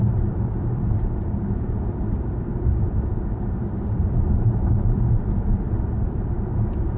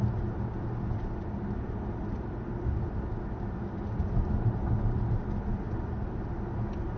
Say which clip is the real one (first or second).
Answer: second